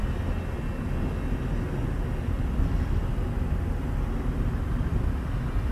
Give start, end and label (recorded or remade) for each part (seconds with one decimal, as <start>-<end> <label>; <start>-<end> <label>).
0.0-5.7 recorded